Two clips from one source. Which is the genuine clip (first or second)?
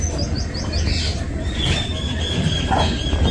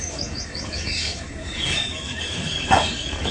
first